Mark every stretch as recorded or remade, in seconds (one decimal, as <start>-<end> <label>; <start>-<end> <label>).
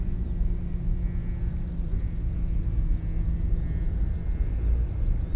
0.0-5.4 recorded